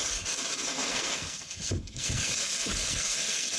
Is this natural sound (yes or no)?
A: no